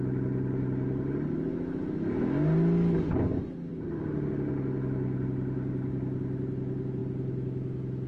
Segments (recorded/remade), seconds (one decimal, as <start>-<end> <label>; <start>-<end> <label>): 0.0-8.1 recorded